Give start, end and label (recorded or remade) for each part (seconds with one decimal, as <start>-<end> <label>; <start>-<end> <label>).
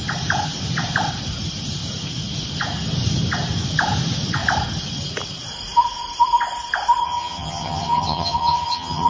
0.0-7.0 recorded; 7.0-9.1 remade